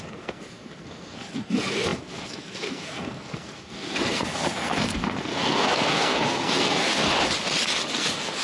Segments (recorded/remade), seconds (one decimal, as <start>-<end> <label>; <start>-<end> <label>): 0.0-7.0 remade; 7.0-7.9 recorded; 7.9-8.4 remade